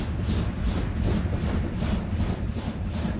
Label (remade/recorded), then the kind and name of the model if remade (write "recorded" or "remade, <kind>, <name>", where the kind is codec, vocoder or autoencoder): recorded